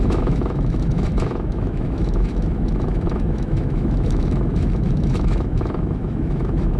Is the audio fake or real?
fake